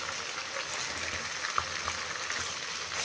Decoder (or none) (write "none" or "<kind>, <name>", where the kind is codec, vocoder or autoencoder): none